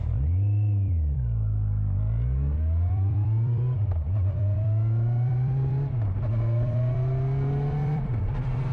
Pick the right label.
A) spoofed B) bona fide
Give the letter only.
A